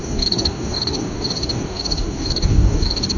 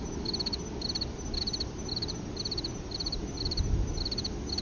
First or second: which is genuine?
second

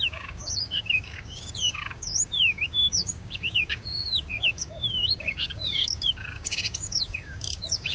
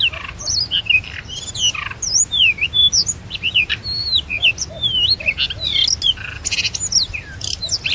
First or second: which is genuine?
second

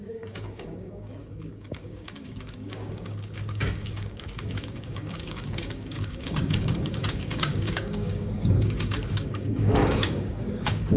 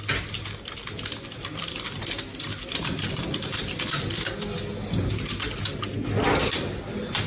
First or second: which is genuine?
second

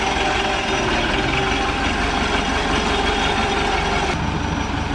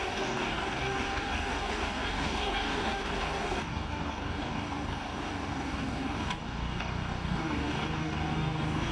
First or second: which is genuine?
first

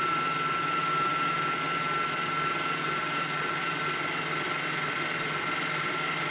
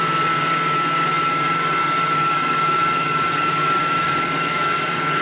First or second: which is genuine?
first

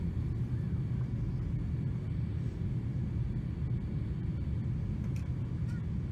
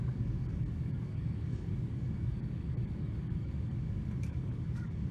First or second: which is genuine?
first